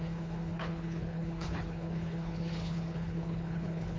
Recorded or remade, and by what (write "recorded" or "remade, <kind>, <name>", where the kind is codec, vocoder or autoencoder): remade, codec, HILCodec